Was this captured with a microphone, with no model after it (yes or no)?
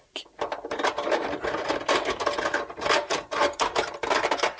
no